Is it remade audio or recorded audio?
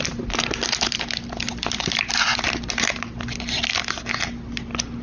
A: recorded